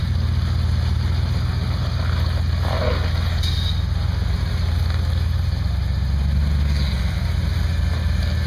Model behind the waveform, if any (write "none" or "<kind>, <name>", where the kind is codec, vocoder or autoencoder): none